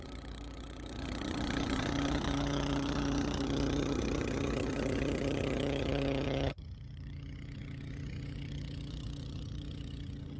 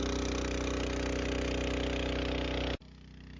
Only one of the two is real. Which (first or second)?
second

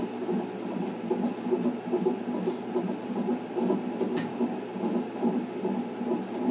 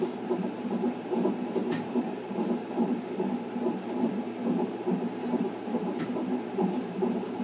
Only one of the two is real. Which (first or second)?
first